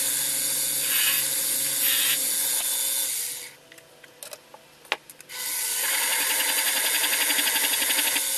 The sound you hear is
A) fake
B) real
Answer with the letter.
B